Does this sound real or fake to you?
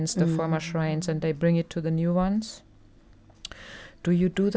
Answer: real